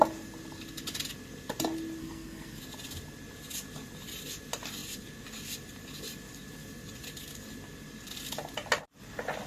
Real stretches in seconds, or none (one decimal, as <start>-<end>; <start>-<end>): 0.0-2.0; 2.6-9.5

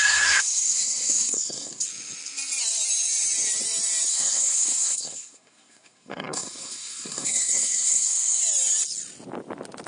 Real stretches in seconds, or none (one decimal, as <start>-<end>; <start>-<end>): 1.8-4.1; 8.4-9.9